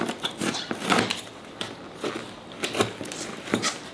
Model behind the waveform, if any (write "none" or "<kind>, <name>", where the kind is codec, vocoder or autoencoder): none